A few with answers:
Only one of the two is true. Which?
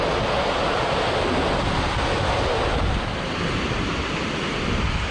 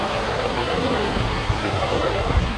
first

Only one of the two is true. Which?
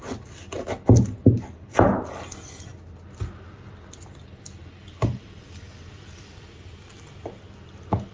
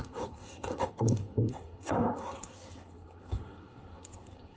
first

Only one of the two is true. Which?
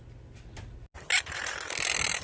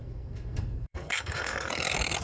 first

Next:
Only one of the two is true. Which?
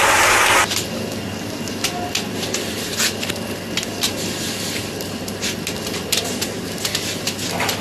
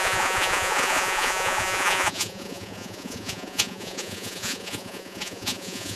first